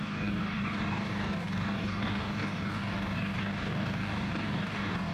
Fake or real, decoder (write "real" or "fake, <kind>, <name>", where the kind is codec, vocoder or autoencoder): fake, codec, DAC